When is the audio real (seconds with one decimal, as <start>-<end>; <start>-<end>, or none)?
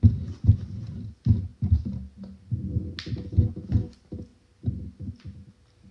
0.0-5.9